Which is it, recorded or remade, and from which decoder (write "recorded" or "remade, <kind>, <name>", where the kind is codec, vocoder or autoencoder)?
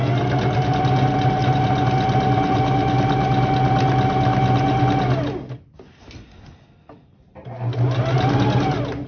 recorded